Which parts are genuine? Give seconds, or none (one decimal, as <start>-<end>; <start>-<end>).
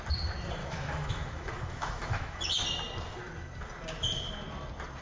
0.0-0.6; 2.4-5.0